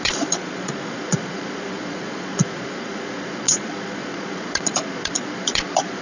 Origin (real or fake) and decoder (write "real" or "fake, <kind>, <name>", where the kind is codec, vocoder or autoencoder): fake, vocoder, Vocos